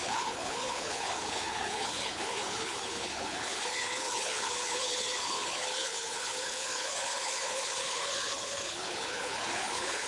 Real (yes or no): no